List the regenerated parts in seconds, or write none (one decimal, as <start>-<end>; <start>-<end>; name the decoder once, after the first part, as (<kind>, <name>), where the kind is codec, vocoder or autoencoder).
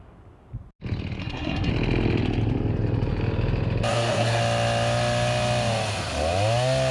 1.2-1.7 (codec, SNAC); 3.9-4.4